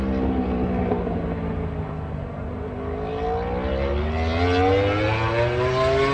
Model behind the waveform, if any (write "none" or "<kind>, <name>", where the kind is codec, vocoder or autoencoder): none